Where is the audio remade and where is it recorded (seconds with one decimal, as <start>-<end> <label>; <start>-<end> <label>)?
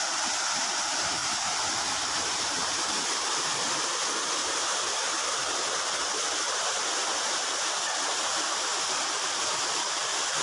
0.0-1.2 recorded; 1.2-3.4 remade; 3.4-4.4 recorded; 4.4-7.5 remade; 7.5-8.7 recorded; 8.7-9.5 remade; 9.5-10.4 recorded